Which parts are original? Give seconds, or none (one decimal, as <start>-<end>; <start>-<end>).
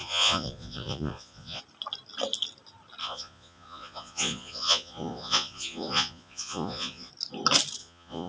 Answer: 1.6-3.0; 7.1-7.8